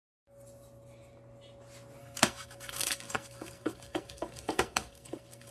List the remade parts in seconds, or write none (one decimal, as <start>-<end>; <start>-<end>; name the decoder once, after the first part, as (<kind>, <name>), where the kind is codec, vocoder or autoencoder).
2.0-5.5 (codec, SNAC)